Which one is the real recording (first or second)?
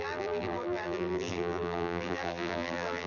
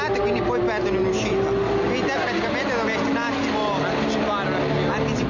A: second